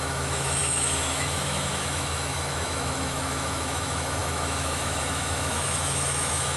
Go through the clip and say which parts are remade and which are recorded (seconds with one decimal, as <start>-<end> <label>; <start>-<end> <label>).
0.0-6.6 remade